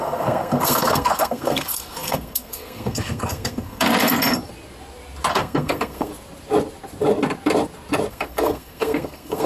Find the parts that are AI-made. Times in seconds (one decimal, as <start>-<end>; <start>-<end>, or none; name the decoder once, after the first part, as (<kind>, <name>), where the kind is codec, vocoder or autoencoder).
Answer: 0.0-3.9 (codec, SNAC); 5.3-6.1; 8.1-9.5